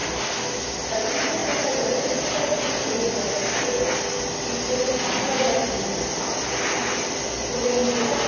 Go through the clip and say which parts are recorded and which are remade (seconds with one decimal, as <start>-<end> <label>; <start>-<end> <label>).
0.0-1.4 recorded; 1.4-5.7 remade; 5.7-8.3 recorded